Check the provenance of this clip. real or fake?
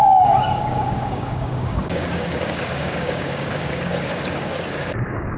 fake